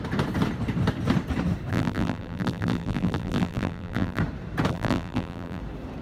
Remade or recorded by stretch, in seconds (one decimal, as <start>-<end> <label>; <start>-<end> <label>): 0.0-1.7 recorded; 1.7-4.2 remade; 4.2-4.7 recorded; 4.7-5.6 remade; 5.6-6.0 recorded